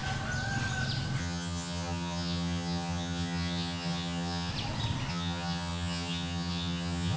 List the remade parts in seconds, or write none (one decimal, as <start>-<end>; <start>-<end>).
1.2-4.5; 5.1-7.2